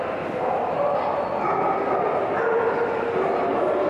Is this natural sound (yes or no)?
yes